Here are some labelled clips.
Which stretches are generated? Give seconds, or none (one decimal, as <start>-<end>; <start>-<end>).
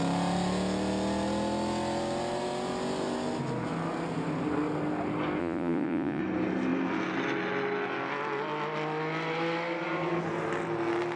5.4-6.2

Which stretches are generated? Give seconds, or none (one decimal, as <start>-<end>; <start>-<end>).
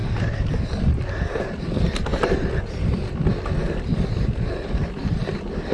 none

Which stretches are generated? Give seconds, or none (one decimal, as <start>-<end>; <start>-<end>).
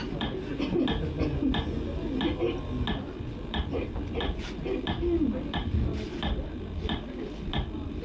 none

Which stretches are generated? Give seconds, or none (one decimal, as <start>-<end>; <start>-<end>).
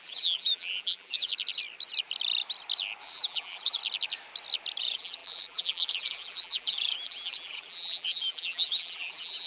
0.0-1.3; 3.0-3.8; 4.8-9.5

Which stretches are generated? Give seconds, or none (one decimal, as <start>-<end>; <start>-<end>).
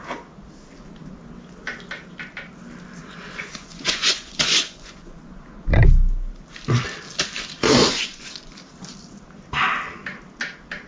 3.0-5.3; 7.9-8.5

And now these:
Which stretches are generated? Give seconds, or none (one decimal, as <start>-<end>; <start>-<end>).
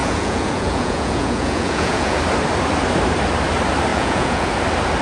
0.0-2.2; 3.9-4.5